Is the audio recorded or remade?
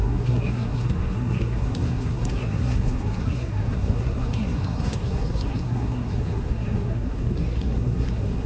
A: remade